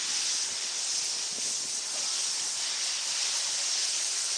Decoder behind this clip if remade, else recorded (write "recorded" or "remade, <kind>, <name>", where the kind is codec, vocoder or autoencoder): recorded